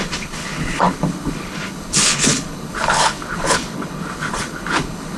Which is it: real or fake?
fake